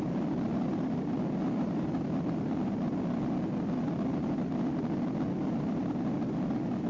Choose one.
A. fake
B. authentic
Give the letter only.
B